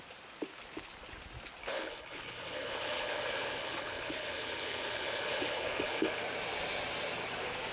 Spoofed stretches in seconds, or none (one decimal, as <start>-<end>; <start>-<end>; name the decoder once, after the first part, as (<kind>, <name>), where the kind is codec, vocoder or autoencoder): 1.6-6.2 (codec, HILCodec)